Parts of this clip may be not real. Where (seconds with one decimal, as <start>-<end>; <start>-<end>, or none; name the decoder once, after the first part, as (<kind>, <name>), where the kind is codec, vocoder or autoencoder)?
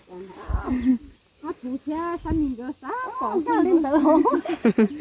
none